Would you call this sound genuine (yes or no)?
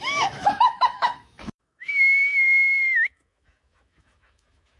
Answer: no